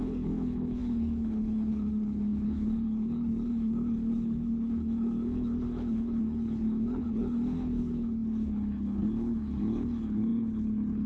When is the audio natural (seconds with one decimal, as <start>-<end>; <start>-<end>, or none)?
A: none